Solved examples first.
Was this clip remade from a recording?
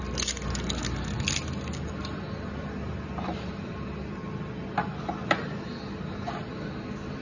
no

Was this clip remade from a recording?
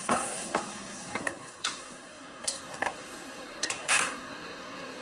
yes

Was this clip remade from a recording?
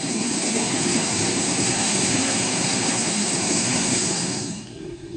yes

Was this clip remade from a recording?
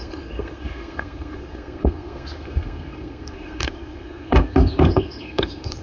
yes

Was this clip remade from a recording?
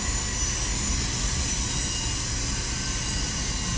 no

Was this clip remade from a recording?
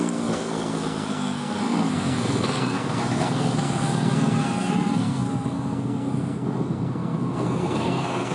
yes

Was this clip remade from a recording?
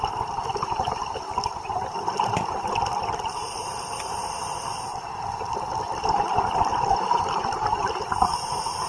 no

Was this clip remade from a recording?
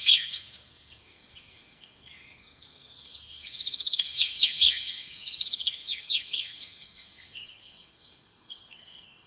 yes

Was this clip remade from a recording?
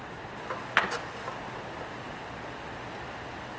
no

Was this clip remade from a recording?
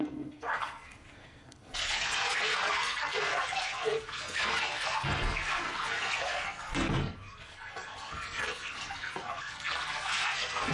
yes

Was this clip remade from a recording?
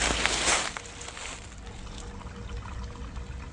no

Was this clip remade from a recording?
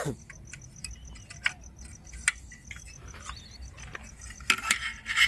no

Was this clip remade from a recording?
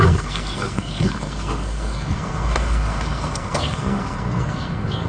yes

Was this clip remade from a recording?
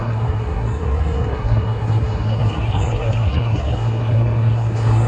yes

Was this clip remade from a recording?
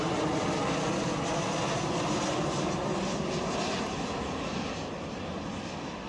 no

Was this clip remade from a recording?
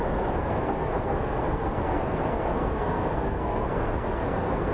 yes